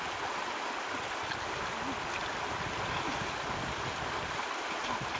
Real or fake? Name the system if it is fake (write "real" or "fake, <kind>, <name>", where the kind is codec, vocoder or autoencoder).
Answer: real